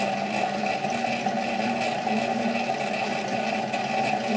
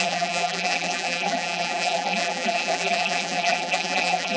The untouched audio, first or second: first